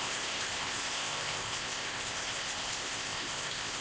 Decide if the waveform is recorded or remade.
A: remade